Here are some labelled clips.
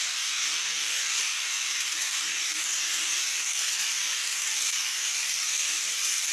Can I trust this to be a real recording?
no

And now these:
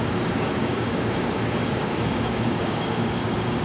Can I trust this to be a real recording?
no